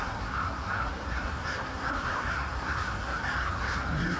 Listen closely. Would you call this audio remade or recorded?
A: remade